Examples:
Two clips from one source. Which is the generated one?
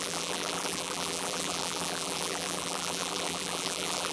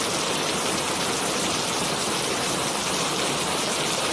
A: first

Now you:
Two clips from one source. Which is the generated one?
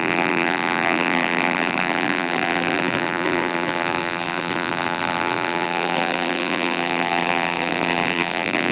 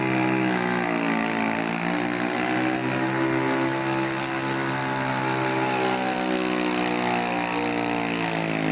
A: first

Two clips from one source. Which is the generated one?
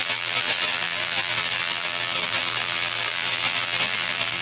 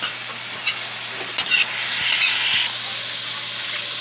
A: first